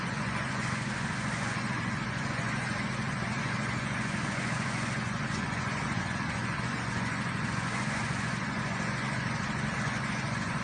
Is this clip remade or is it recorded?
remade